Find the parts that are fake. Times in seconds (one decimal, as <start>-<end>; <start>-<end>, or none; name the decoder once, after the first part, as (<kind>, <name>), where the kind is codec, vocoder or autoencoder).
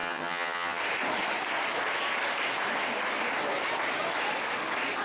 0.0-0.8 (vocoder, HiFi-GAN)